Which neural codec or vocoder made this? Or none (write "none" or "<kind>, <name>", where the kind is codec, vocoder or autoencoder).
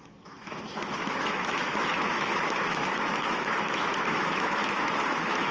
autoencoder, DAC-VAE